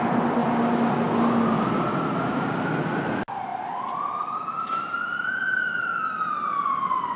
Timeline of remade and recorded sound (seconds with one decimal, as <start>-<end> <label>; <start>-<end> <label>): 0.0-7.2 recorded